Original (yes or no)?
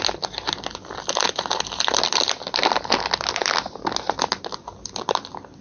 yes